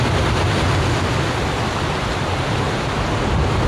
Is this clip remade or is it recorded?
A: recorded